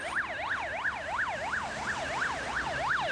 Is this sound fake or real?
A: real